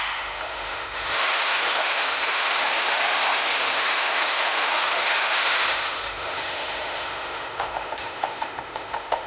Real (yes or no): no